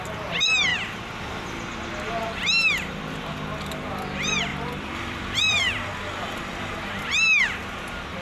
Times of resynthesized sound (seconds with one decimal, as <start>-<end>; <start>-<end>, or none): 4.5-6.7